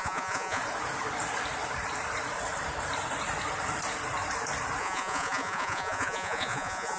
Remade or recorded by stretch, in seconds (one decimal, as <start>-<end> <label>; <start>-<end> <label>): 0.0-0.6 remade; 0.6-4.8 recorded; 4.8-7.0 remade